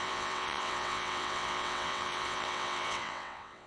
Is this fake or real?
fake